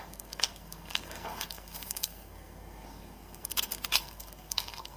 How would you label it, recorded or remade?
remade